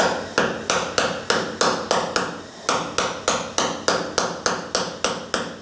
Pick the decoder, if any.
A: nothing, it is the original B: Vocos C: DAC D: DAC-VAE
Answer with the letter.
A